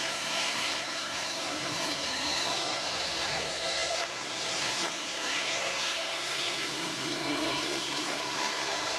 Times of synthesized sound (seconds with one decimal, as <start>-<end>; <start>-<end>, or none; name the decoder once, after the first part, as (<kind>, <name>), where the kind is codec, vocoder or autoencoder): 0.0-9.0 (codec, SNAC)

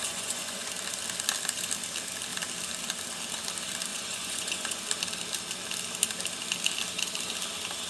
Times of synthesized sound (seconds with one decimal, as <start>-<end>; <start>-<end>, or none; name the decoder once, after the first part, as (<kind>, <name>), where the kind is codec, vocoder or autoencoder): 0.0-0.7 (vocoder, Vocos); 3.9-4.8

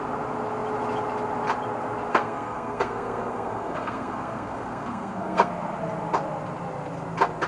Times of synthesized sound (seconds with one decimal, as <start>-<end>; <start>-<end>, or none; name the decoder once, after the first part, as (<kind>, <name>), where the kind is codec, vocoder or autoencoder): 2.1-5.5 (codec, SNAC)

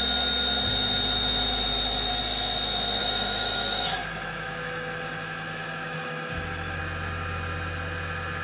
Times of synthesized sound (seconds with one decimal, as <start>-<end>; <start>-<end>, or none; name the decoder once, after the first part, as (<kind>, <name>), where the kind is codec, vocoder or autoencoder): 3.0-6.8 (autoencoder, DAC-VAE)

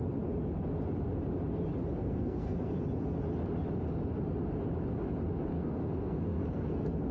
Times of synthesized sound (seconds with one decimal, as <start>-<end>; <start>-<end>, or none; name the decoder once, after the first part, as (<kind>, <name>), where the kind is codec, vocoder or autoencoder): 2.0-2.7 (codec, SNAC); 5.5-7.1

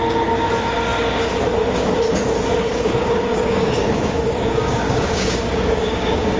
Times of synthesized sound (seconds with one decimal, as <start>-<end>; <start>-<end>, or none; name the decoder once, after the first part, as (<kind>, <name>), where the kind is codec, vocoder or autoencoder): 2.7-6.4 (codec, DAC)

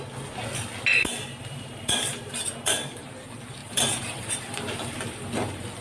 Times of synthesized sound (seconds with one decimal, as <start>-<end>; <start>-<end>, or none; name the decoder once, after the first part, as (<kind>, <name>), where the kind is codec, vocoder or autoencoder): 1.4-3.1 (vocoder, BigVGAN v2); 3.6-5.0